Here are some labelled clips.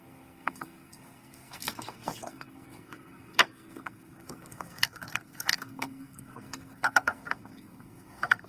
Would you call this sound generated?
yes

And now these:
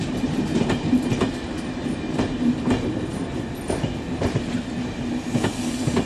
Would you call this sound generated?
no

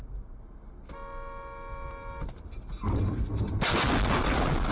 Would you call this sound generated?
no